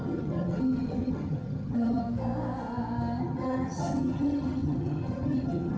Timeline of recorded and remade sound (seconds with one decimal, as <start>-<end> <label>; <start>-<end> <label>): 0.0-2.0 remade; 2.0-3.2 recorded; 3.2-5.8 remade